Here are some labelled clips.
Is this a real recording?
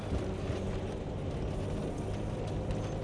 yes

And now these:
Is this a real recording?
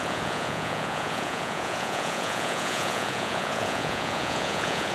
no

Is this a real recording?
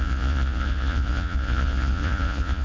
no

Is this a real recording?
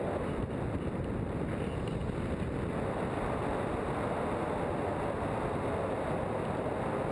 yes